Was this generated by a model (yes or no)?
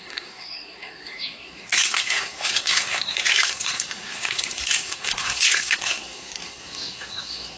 yes